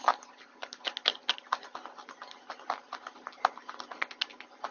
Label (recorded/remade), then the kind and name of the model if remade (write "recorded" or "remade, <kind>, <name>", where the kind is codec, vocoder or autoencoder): recorded